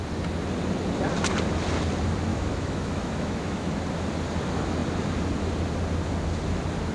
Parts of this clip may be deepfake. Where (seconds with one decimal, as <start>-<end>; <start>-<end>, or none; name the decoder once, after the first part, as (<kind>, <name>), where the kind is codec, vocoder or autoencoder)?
2.3-3.8 (autoencoder, DAC-VAE)

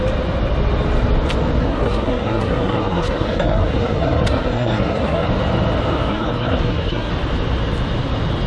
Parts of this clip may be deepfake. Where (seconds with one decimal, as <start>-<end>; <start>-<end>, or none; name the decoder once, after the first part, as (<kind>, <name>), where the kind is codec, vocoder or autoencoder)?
1.6-5.3 (codec, SNAC); 6.1-7.1

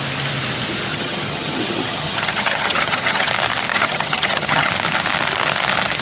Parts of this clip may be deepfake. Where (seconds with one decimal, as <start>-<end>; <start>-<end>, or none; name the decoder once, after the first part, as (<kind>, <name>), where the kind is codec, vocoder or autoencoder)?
0.9-3.3 (vocoder, HiFi-GAN); 3.7-4.7

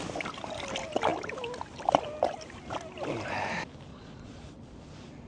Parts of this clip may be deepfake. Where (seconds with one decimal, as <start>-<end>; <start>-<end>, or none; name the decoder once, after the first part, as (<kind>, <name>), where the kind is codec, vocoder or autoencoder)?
3.9-4.4 (vocoder, Vocos)

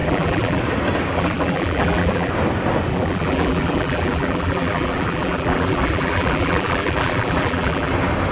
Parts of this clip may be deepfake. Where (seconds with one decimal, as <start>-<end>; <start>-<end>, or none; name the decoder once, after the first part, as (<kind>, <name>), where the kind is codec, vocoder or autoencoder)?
0.0-0.6 (vocoder, BigVGAN v2); 1.1-2.3; 2.9-7.9

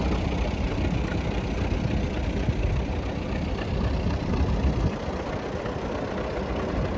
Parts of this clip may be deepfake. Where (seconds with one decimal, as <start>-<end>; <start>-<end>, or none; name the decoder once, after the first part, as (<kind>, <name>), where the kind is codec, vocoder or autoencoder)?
none